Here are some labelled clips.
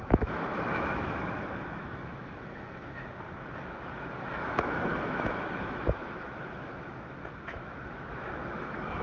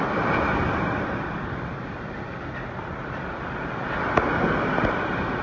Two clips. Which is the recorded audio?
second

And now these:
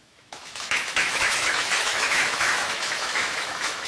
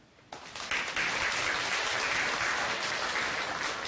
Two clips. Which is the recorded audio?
second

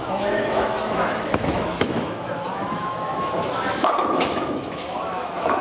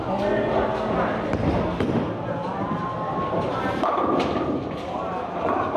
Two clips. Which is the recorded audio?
second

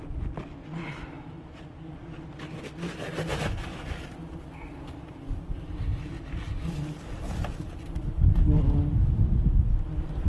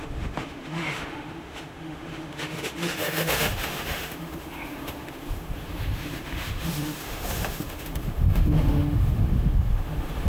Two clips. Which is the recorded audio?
first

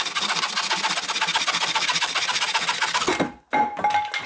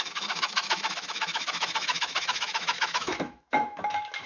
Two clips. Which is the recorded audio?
first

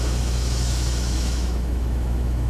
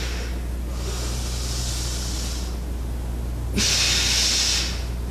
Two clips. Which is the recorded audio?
second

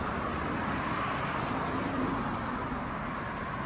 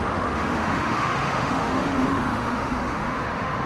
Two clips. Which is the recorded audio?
first